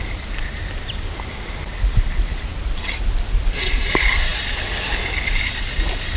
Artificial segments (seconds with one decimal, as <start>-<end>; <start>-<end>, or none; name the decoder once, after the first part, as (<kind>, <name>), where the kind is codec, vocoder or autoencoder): none